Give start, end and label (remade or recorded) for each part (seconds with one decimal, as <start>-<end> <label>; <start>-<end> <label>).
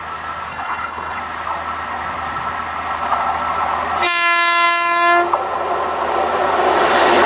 0.0-0.5 recorded; 0.5-1.2 remade; 1.2-7.3 recorded